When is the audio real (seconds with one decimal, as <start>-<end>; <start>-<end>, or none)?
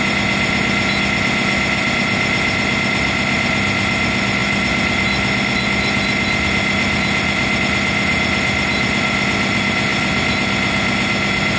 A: 0.0-11.6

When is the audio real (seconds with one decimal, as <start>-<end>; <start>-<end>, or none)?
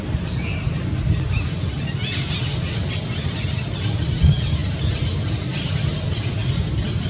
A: 0.0-7.1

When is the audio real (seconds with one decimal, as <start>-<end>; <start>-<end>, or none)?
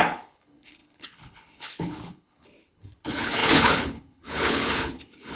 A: none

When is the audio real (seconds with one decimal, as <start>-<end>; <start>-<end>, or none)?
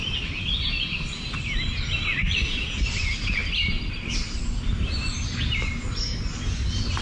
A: 0.0-7.0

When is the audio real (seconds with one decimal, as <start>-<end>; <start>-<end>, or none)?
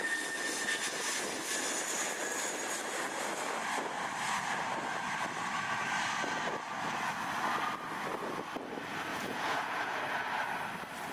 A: 0.0-9.1; 10.0-11.1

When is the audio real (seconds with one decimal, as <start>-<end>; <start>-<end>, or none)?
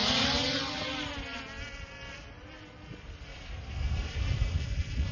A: 0.0-3.3; 4.6-5.1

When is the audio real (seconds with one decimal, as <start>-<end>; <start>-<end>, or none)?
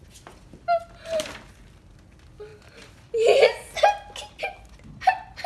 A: 0.0-5.5